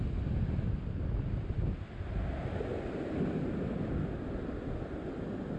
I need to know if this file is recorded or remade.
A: recorded